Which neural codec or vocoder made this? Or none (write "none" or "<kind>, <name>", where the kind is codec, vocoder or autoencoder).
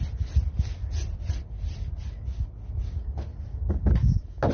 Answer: none